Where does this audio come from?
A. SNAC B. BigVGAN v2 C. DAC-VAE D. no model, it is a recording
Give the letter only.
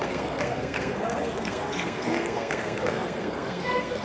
A